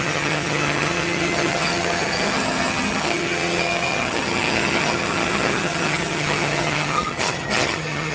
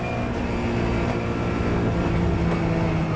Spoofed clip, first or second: first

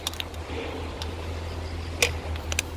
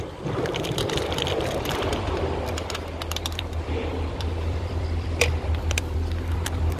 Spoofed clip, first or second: second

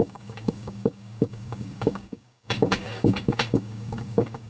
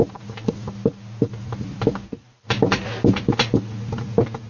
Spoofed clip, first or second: first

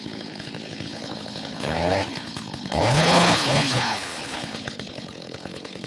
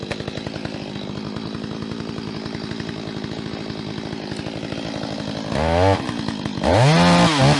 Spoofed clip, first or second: first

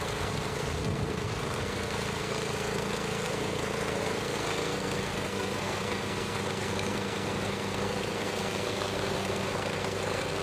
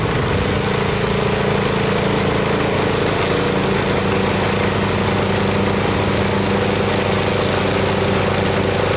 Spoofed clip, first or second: first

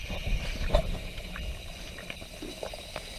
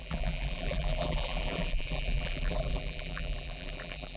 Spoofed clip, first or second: second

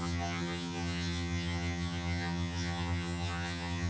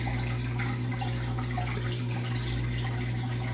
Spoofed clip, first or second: first